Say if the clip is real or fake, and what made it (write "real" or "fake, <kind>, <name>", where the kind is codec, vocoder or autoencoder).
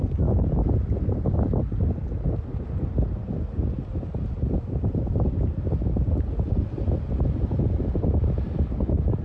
real